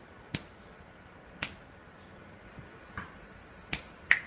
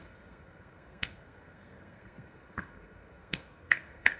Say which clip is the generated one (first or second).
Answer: second